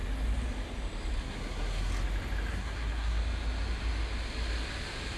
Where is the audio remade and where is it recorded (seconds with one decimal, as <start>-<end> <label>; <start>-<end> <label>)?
0.0-1.2 recorded; 1.2-1.9 remade; 1.9-2.5 recorded; 2.5-3.2 remade; 3.2-5.2 recorded